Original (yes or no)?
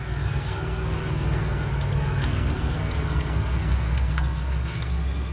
no